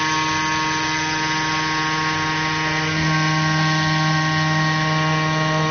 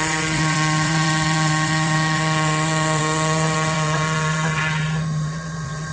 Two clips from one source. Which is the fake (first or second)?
second